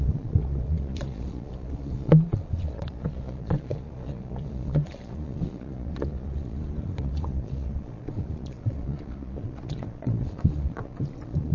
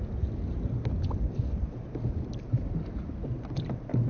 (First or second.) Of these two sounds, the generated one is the first